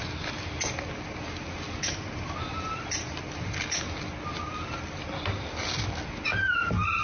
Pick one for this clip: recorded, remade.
recorded